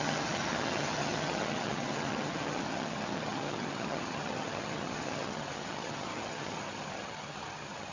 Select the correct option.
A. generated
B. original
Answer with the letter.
A